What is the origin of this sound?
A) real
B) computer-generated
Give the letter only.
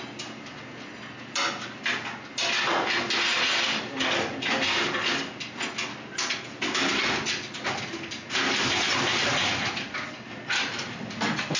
A